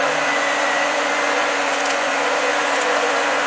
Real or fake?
fake